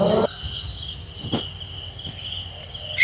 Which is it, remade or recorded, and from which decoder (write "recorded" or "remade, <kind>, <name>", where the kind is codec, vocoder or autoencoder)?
recorded